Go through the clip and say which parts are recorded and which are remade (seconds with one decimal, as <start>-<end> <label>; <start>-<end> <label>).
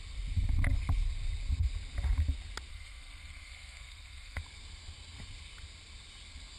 0.0-2.7 recorded; 2.7-4.4 remade; 4.4-6.6 recorded